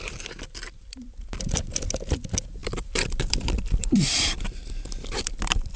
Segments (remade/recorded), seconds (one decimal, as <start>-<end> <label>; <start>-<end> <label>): 0.0-0.6 recorded; 0.6-1.4 remade; 1.4-2.6 recorded; 2.6-5.8 remade